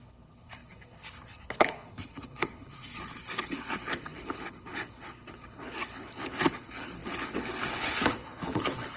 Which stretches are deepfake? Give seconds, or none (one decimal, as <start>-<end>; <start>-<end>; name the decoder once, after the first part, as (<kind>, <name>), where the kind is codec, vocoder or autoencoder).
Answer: 0.0-9.0 (codec, HILCodec)